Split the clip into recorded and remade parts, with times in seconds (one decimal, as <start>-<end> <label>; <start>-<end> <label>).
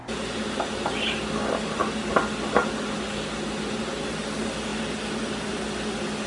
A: 0.0-6.3 recorded